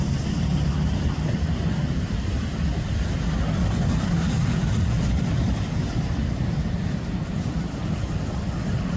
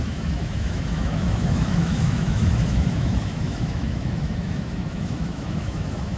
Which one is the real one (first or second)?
first